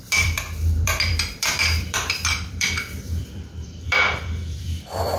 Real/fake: fake